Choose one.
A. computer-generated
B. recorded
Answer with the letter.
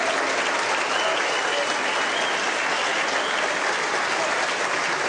B